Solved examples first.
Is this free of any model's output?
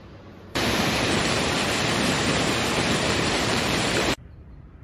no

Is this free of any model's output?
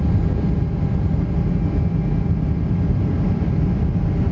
yes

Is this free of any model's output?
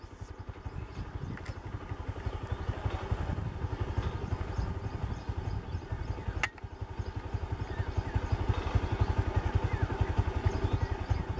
yes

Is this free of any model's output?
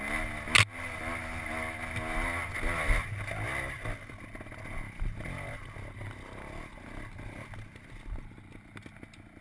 yes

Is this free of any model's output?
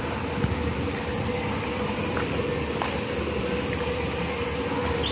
yes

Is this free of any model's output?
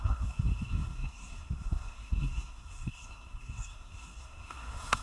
no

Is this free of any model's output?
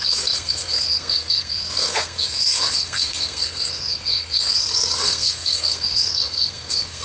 no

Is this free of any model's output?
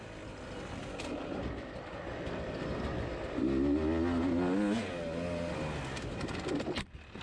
yes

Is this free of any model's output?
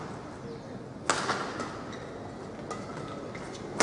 yes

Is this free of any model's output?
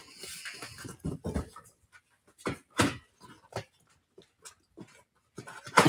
yes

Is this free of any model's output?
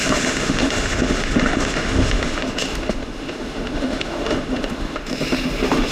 no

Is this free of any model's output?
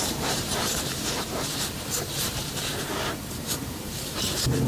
no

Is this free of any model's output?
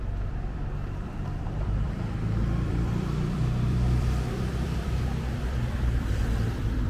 no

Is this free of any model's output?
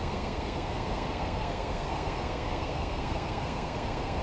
no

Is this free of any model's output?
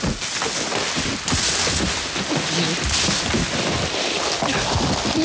yes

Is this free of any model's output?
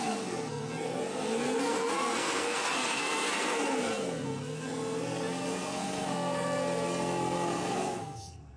no